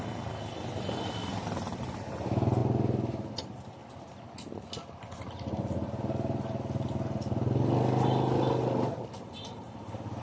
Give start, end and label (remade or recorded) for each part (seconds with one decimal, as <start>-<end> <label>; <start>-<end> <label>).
0.0-10.2 recorded